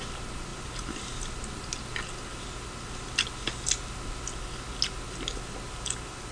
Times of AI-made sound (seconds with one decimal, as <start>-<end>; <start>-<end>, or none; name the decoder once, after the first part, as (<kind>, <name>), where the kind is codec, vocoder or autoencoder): none